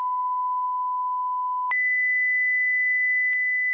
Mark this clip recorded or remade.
recorded